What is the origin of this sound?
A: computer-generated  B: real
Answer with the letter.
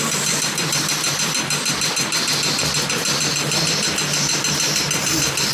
B